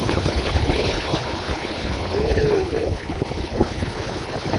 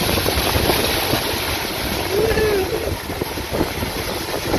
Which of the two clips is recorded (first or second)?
second